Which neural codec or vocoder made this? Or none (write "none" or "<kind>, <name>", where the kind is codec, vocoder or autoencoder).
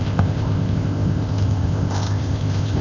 codec, ZipCodec